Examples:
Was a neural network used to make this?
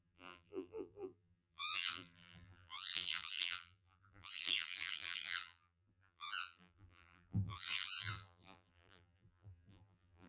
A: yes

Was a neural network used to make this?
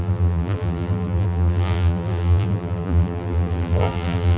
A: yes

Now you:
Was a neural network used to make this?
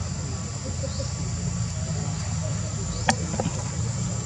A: no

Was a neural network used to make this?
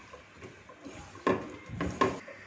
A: no